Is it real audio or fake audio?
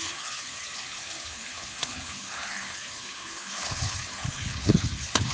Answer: fake